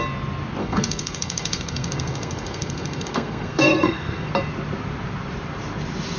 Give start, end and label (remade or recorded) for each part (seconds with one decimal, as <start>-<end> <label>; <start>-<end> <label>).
0.0-0.6 recorded; 0.6-4.3 remade; 4.3-6.2 recorded